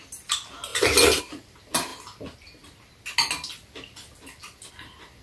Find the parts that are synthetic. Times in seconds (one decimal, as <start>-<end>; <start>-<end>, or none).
none